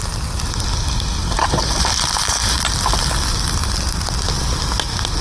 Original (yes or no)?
yes